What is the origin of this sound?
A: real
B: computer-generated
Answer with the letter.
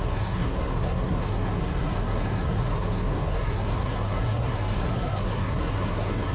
B